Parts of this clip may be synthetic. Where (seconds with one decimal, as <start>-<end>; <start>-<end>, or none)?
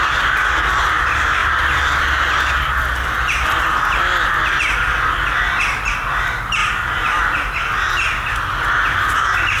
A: 6.6-7.2